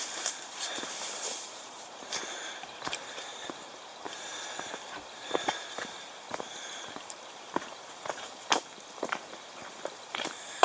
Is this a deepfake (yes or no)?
yes